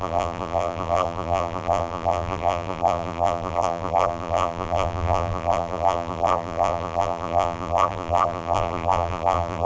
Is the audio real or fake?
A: fake